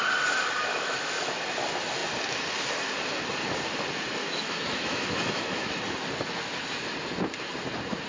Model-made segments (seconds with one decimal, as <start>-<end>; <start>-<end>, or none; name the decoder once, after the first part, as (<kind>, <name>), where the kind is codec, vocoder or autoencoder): 0.7-1.4 (autoencoder, DAC-VAE); 4.2-5.8